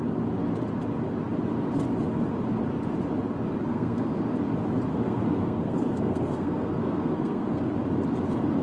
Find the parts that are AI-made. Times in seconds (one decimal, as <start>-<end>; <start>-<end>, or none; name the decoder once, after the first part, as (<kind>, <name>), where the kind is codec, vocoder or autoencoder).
3.7-4.2 (codec, SNAC); 4.9-7.7